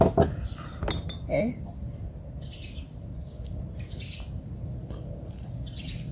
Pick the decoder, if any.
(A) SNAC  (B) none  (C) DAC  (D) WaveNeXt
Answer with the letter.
B